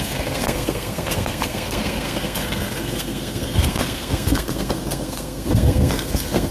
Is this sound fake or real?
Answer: fake